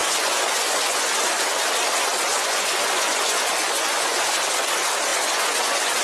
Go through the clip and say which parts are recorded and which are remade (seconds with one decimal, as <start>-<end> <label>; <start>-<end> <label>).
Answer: 0.0-1.4 remade; 1.4-2.3 recorded; 2.3-4.4 remade; 4.4-5.1 recorded; 5.1-6.0 remade